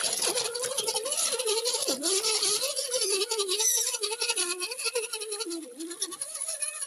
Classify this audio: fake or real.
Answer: real